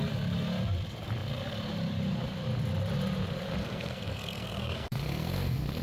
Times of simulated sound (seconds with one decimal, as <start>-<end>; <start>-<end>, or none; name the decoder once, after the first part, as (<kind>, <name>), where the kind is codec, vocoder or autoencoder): 3.6-5.8 (codec, SNAC)